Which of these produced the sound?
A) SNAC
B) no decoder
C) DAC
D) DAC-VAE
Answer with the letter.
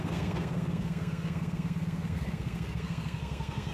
A